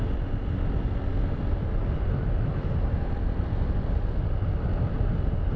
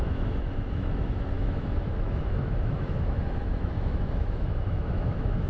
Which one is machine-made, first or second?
second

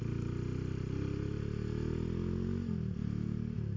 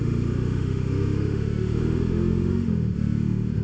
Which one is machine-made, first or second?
second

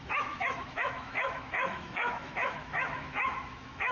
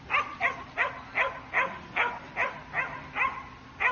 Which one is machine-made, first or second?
first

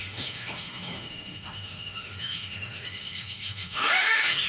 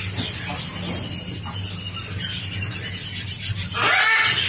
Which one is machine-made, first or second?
first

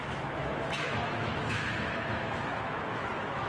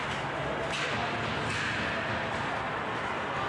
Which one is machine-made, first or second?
first